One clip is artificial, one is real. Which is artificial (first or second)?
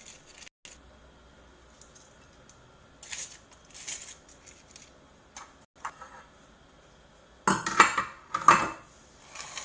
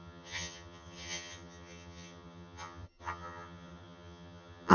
second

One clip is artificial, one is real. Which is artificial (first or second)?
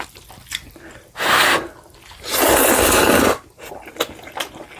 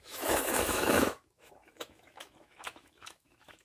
second